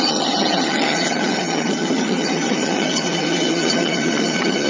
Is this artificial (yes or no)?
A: yes